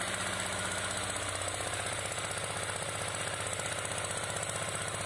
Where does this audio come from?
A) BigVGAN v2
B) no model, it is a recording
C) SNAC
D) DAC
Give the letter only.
B